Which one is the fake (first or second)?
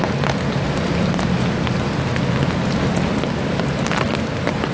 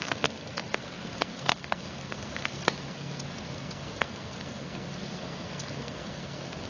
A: second